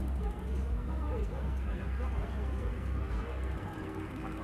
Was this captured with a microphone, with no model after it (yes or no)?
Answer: no